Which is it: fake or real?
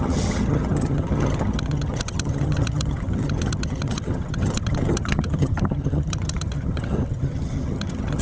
fake